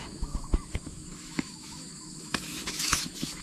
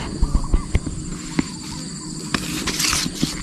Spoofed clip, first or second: first